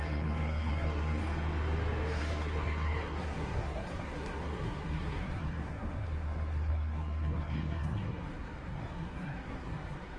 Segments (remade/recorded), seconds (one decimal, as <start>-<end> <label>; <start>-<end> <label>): 0.0-1.2 remade; 1.2-2.2 recorded; 2.2-10.2 remade